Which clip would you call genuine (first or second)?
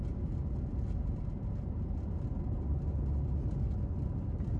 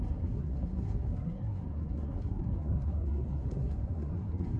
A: first